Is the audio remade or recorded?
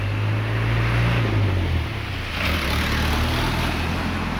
recorded